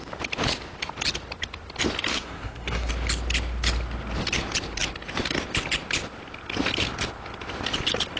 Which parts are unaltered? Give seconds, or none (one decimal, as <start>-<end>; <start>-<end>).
0.0-2.1; 2.9-8.2